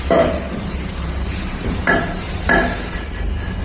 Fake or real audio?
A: real